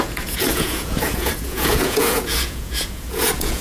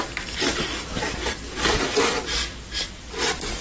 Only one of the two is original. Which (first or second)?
second